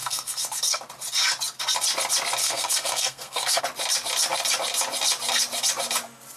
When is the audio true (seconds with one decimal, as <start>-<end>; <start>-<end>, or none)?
0.8-2.4; 3.6-6.4